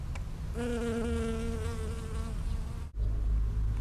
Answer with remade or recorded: recorded